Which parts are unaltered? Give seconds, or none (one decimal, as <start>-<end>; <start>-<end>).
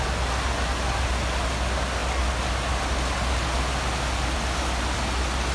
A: 0.0-5.5